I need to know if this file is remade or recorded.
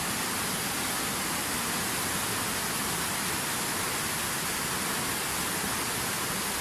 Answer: recorded